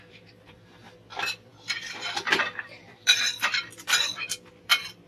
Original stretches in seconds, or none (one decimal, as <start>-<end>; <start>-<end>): none